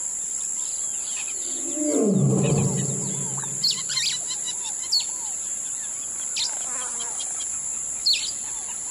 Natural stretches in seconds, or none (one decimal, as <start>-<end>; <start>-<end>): 0.0-8.9